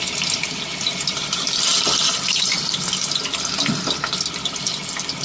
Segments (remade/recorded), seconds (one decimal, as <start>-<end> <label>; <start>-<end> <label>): 0.0-5.2 recorded